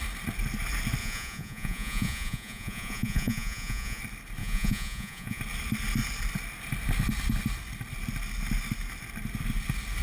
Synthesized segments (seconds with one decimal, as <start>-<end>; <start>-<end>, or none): 1.0-4.0; 4.4-5.4